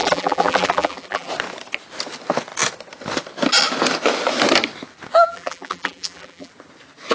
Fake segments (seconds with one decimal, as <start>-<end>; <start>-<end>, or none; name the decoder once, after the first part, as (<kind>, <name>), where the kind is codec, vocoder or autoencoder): 0.0-1.3 (vocoder, BigVGAN v2); 5.1-6.5